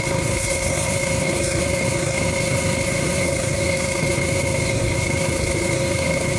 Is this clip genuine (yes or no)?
no